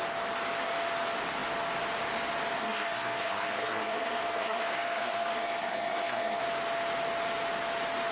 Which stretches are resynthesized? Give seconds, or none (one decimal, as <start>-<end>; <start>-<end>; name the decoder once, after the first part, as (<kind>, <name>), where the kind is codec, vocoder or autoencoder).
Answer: 2.6-6.4 (codec, SNAC)